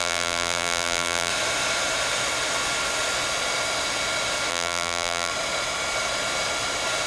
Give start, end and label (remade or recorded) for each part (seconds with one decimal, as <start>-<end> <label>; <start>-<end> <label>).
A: 0.0-1.3 remade; 1.3-4.5 recorded; 4.5-5.3 remade; 5.3-7.1 recorded

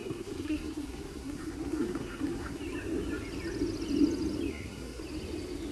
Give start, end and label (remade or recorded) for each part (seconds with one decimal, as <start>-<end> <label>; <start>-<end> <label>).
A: 0.0-2.6 remade; 2.6-4.5 recorded; 4.5-5.0 remade; 5.0-5.7 recorded

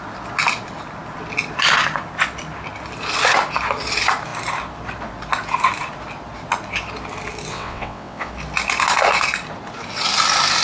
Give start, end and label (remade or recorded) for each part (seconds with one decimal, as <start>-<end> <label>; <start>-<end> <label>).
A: 0.0-7.5 recorded; 7.5-8.3 remade; 8.3-10.6 recorded

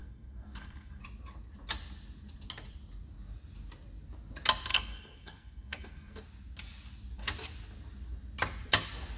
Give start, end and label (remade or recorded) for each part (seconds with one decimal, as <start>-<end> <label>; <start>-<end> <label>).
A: 0.0-1.0 remade; 1.0-4.7 recorded; 4.7-6.2 remade; 6.2-9.2 recorded

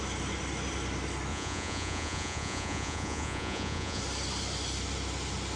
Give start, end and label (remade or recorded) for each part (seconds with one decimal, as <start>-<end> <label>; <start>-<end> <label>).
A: 0.0-1.3 recorded; 1.3-4.0 remade; 4.0-5.6 recorded